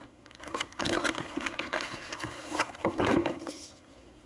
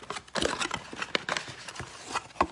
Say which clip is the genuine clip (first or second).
second